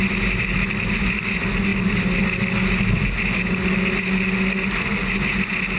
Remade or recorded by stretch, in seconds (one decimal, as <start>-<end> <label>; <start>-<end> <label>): 0.0-5.8 recorded